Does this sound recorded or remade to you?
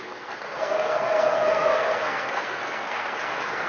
remade